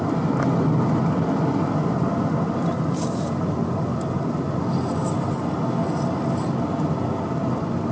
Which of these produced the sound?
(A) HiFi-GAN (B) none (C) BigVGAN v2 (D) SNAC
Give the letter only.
B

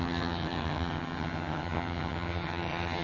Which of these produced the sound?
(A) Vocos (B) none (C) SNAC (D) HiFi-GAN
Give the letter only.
D